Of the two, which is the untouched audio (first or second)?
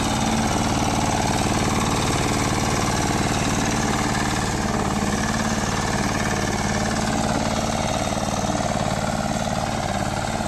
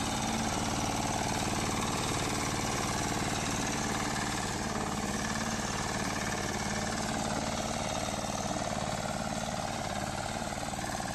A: first